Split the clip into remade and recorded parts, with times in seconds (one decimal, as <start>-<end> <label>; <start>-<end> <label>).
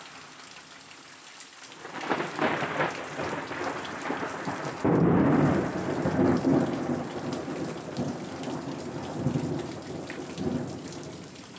0.0-11.6 recorded